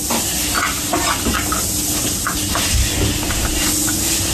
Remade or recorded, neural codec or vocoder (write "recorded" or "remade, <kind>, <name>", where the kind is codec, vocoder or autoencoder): recorded